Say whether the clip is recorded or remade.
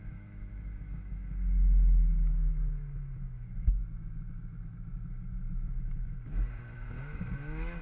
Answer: remade